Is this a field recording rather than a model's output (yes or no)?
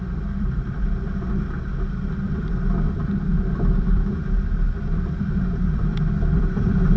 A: no